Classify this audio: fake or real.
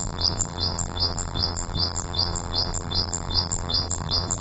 fake